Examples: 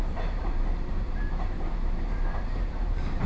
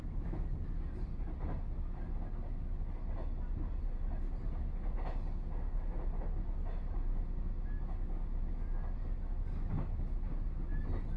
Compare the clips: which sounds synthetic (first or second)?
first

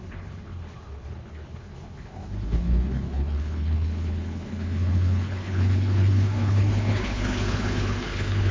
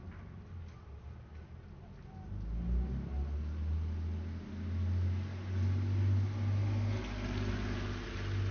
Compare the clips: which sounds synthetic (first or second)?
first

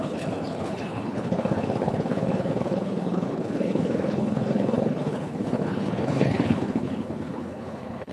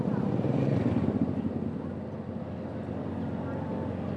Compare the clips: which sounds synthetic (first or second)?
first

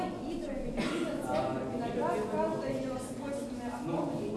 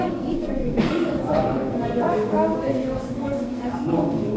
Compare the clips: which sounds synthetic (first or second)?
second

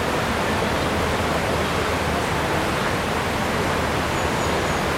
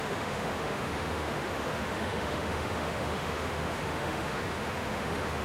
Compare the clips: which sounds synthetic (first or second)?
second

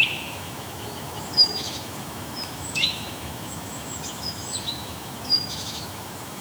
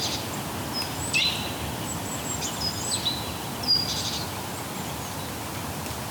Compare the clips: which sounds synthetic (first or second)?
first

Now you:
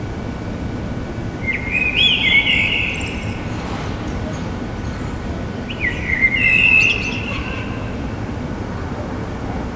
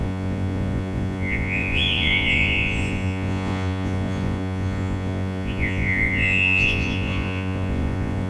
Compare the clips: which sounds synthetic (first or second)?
second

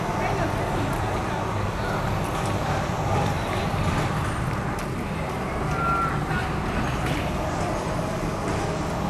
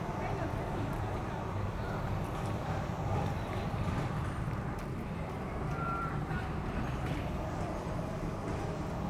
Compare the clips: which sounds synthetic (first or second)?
second